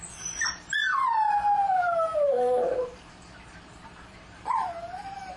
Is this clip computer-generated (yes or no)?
yes